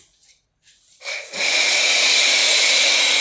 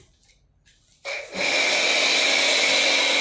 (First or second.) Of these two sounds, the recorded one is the second